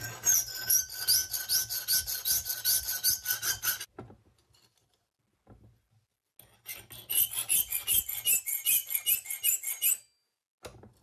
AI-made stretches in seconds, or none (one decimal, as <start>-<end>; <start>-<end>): none

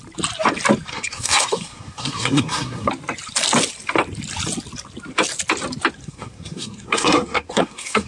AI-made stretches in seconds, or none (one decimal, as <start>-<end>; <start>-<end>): 0.9-2.9; 6.0-8.1

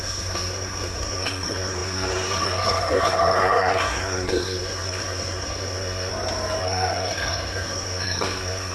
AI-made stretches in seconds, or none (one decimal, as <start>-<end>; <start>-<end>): 0.0-6.1; 6.6-8.7

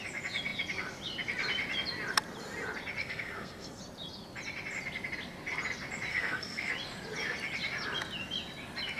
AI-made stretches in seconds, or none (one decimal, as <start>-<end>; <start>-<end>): 3.0-3.8; 6.1-6.7

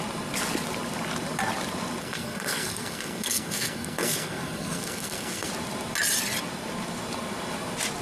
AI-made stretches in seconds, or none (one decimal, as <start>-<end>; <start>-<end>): 2.0-5.5